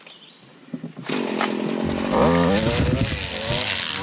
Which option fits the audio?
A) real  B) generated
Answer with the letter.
A